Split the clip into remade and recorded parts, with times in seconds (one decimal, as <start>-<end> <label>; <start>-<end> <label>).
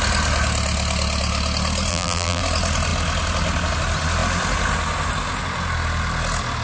0.0-1.9 recorded; 1.9-2.4 remade; 2.4-6.6 recorded